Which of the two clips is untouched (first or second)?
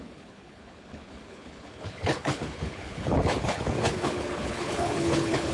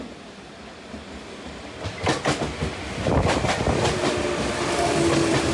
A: second